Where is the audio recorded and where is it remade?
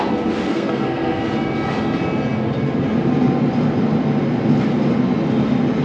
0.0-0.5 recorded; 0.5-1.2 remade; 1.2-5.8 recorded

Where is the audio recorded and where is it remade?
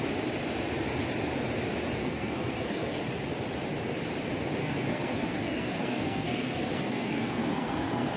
0.0-2.0 recorded; 2.0-3.0 remade; 3.0-4.6 recorded; 4.6-8.2 remade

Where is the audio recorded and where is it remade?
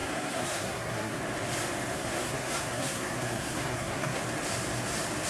0.0-1.2 remade; 1.2-1.9 recorded; 1.9-4.2 remade; 4.2-5.3 recorded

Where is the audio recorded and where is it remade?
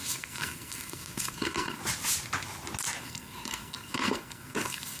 0.0-1.8 remade; 1.8-3.0 recorded; 3.0-5.0 remade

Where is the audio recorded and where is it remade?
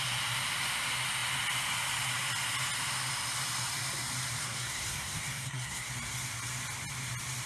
0.0-4.4 recorded; 4.4-5.9 remade; 5.9-7.5 recorded